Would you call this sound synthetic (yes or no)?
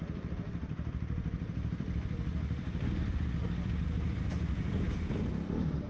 yes